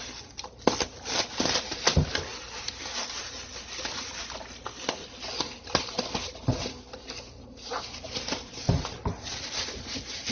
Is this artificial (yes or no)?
no